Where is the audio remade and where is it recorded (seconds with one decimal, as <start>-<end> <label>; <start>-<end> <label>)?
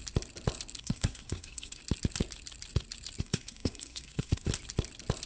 0.0-0.8 recorded; 0.8-1.8 remade; 1.8-3.2 recorded; 3.2-4.5 remade; 4.5-5.3 recorded